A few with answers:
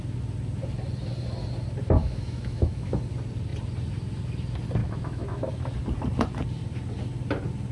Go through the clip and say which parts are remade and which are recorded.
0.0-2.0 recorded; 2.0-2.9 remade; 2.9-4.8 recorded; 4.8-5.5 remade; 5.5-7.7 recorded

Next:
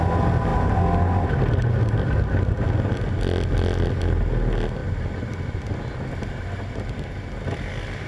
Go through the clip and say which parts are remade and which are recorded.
0.0-8.1 recorded

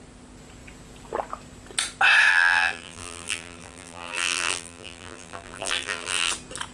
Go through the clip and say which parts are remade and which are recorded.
0.0-2.3 recorded; 2.3-6.3 remade; 6.3-6.7 recorded

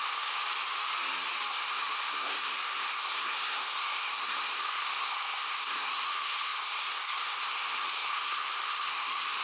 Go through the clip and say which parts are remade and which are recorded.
0.0-0.4 remade; 0.4-1.5 recorded; 1.5-9.4 remade

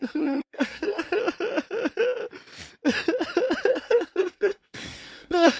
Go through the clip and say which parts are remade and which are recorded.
0.0-1.2 remade; 1.2-3.7 recorded; 3.7-5.6 remade